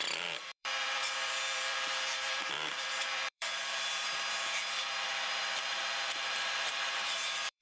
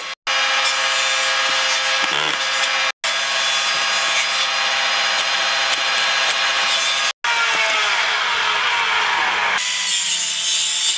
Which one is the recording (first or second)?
second